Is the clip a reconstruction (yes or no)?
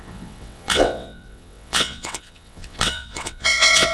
yes